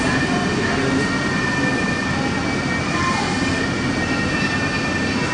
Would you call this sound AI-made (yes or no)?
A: no